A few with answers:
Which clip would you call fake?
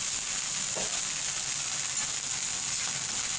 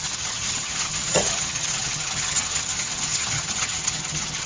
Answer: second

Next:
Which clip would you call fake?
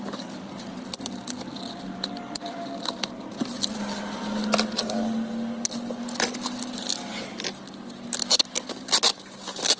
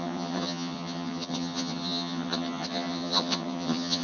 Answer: second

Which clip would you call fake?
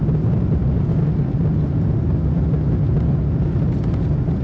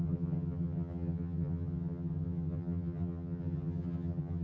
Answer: second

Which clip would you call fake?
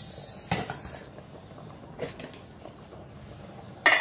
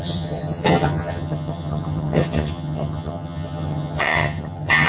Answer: second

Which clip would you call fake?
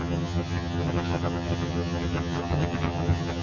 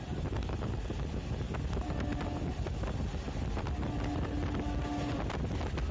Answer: first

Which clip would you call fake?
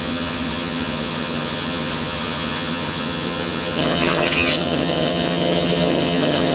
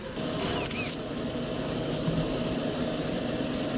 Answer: first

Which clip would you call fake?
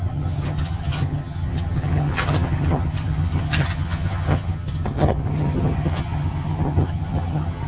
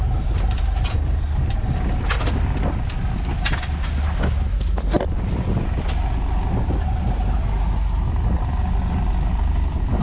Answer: first